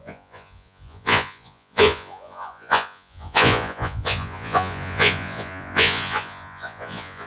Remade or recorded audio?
remade